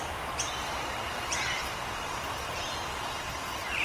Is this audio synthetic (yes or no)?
yes